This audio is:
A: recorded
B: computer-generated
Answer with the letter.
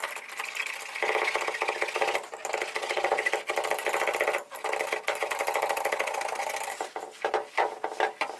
A